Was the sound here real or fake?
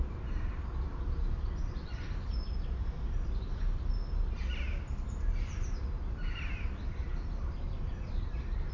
real